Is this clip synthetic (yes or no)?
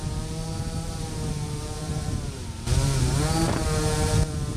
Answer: yes